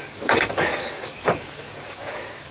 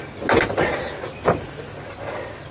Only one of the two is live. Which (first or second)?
second